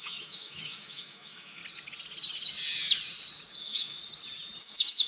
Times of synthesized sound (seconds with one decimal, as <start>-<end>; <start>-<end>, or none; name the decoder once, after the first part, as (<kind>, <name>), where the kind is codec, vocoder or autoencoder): 0.0-1.6 (autoencoder, DAC-VAE); 3.6-4.0; 4.6-5.1